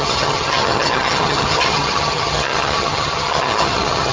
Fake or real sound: fake